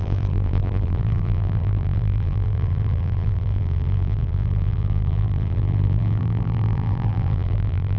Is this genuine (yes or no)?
no